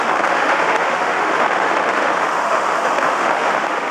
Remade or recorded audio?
remade